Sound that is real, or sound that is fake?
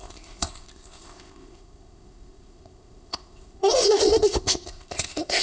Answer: fake